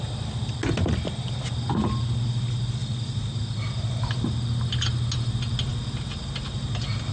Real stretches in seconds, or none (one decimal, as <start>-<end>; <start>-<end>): 0.0-7.1